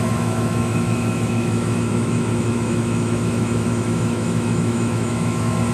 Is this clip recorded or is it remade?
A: remade